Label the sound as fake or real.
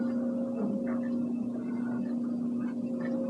real